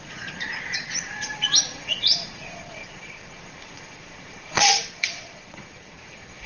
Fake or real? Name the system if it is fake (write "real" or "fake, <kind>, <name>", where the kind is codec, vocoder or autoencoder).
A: fake, vocoder, Vocos